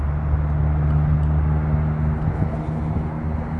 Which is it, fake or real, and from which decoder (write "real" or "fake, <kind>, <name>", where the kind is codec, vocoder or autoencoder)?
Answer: real